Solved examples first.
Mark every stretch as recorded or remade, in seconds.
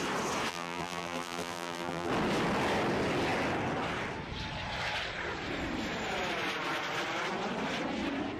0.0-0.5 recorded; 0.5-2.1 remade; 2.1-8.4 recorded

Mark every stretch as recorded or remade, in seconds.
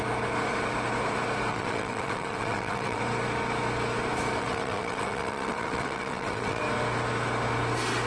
0.0-1.5 recorded; 1.5-3.0 remade; 3.0-4.4 recorded; 4.4-6.6 remade; 6.6-8.1 recorded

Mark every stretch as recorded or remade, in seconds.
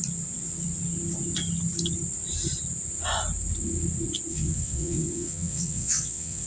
0.0-4.3 recorded; 4.3-6.5 remade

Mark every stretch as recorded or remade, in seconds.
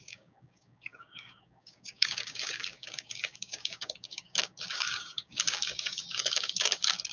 0.0-7.1 remade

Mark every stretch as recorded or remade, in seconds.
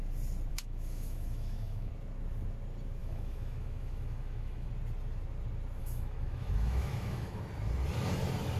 0.0-0.5 recorded; 0.5-1.9 remade; 1.9-3.0 recorded; 3.0-4.7 remade; 4.7-5.8 recorded; 5.8-7.4 remade; 7.4-8.6 recorded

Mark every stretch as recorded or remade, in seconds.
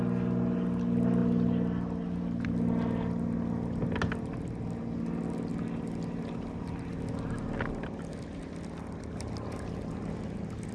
0.0-10.7 recorded